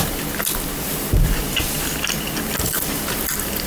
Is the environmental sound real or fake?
fake